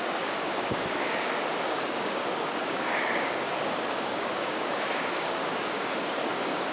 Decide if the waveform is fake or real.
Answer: fake